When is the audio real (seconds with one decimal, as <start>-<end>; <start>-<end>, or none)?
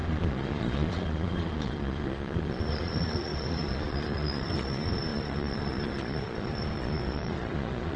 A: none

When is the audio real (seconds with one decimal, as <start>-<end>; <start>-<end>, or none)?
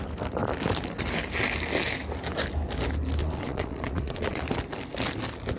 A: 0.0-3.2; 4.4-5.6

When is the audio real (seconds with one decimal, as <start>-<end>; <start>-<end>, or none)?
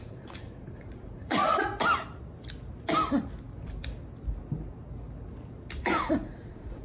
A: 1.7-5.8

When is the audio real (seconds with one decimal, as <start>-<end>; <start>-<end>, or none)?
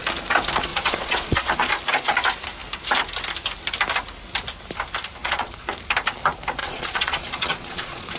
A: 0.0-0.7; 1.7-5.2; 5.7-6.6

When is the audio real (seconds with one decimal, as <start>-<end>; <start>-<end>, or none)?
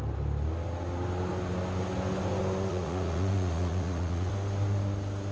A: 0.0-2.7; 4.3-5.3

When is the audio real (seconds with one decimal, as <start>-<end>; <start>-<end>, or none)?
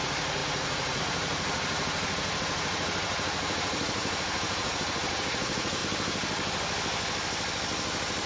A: 5.8-8.3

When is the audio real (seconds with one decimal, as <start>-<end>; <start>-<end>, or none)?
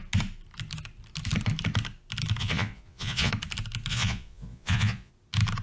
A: 0.0-2.4; 3.3-3.9; 5.1-5.6